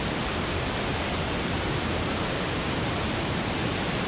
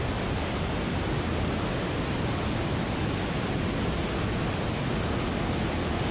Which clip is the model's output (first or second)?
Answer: first